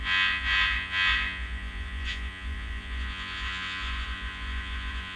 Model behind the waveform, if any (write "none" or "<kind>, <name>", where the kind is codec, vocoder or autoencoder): vocoder, Vocos